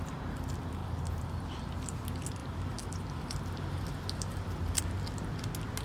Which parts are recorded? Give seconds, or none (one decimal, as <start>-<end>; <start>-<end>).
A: 0.0-0.8; 1.4-2.4; 4.8-5.8